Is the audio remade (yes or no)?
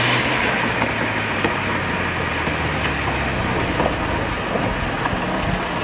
no